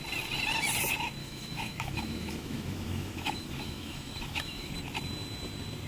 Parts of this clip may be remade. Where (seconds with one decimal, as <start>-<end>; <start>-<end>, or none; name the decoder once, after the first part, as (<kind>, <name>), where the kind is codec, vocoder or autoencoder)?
1.2-4.7 (autoencoder, DAC-VAE)